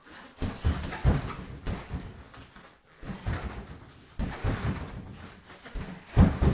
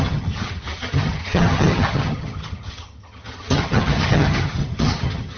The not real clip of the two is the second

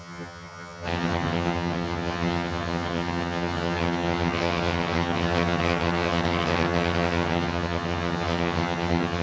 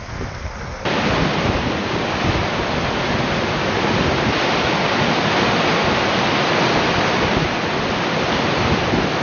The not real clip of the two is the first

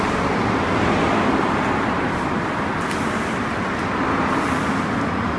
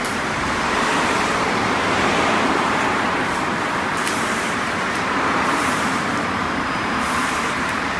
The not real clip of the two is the second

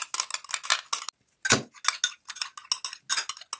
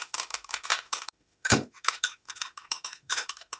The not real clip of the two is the second